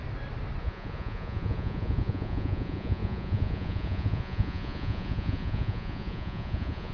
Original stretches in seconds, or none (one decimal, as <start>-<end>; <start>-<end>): 0.0-0.6